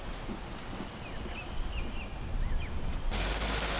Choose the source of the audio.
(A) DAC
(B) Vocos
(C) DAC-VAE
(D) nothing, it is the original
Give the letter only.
D